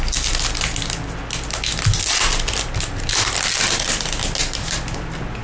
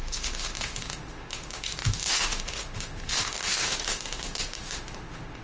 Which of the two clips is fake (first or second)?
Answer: second